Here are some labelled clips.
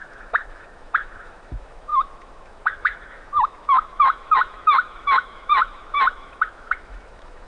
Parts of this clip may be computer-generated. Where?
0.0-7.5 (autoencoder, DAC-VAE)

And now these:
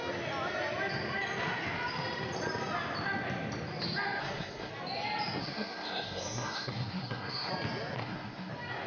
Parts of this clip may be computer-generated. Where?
4.2-4.7 (codec, SNAC); 5.4-7.5; 8.0-8.5

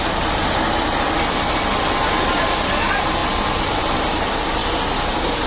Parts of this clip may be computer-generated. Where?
0.0-2.0 (vocoder, BigVGAN v2); 2.6-5.5

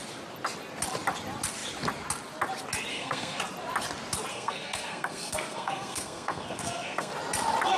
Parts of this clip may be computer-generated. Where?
2.9-3.4 (codec, SNAC); 4.3-7.1

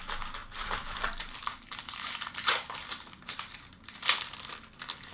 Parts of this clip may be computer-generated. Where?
0.4-3.5 (vocoder, BigVGAN v2)

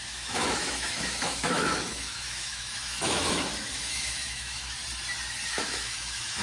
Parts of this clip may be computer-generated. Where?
0.0-4.8 (autoencoder, DAC-VAE); 5.5-6.4

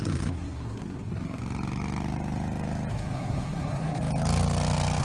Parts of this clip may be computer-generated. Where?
0.0-1.4 (codec, SNAC); 2.9-4.0

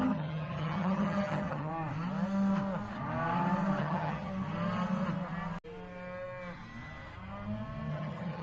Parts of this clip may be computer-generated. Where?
0.0-1.7 (vocoder, HiFi-GAN); 3.8-4.3; 7.9-8.4